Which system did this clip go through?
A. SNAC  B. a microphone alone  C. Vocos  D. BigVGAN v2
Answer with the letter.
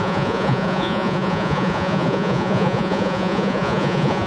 C